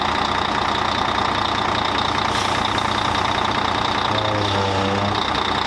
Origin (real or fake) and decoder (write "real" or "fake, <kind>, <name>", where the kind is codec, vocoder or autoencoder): real